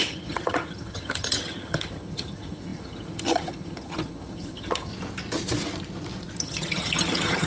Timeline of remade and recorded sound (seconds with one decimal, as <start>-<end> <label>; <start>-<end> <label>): 0.0-4.9 remade; 4.9-6.4 recorded; 6.4-7.5 remade